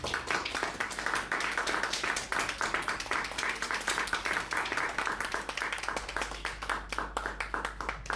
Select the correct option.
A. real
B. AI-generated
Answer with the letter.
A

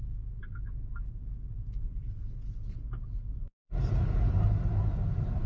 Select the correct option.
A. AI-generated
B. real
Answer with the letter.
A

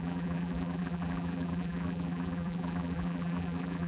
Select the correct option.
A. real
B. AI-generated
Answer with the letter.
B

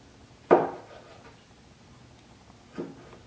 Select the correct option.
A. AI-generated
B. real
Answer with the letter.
B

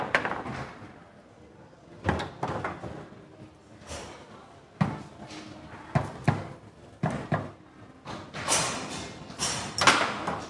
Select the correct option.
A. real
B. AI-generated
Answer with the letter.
A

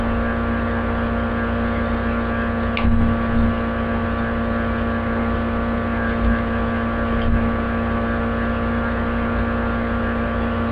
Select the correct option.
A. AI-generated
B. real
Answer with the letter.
B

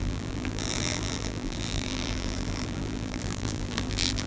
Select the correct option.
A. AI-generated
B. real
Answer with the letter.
A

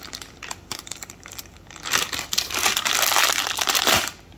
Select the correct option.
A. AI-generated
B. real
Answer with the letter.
A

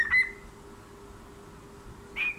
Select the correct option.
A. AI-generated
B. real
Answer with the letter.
B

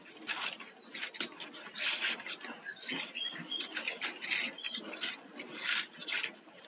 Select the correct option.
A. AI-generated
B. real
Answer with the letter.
B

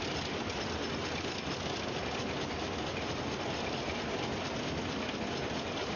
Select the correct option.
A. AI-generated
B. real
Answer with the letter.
B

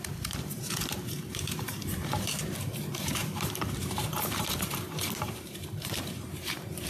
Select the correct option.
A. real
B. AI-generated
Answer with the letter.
B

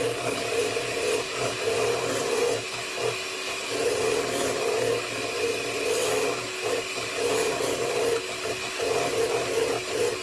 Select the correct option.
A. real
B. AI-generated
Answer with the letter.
A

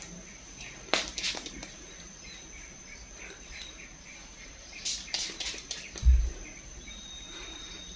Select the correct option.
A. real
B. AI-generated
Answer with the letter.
B